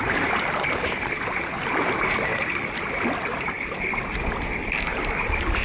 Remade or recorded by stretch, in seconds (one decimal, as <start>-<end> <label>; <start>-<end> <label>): 0.0-2.3 recorded; 2.3-3.8 remade; 3.8-4.9 recorded; 4.9-5.6 remade